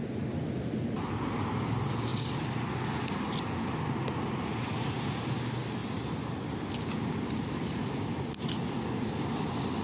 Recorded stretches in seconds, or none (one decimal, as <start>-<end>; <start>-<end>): 0.0-2.1; 3.5-5.8; 8.5-9.8